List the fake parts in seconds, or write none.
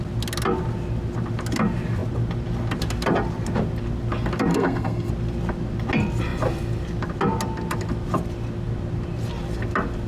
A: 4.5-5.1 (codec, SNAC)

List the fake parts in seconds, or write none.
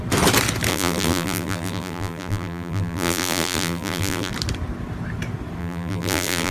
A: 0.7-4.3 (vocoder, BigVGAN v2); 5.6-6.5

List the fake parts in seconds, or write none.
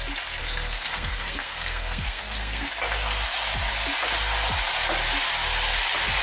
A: 0.4-2.7 (codec, SNAC)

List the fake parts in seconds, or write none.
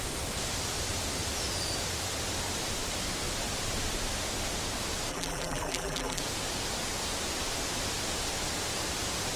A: 5.1-6.2 (vocoder, BigVGAN v2)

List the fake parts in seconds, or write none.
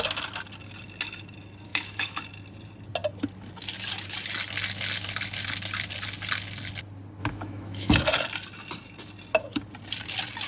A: 1.7-2.2 (autoencoder, DAC-VAE); 7.2-7.9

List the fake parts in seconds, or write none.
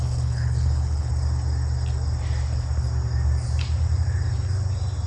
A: 0.0-1.1 (codec, HILCodec)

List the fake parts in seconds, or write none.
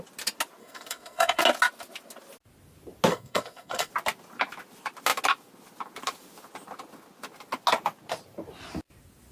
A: 0.6-1.4 (codec, SNAC); 3.1-3.9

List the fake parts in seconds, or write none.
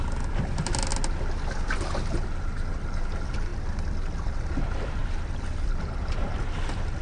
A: none